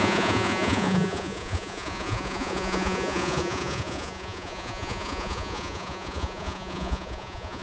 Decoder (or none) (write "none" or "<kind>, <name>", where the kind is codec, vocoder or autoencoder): vocoder, Vocos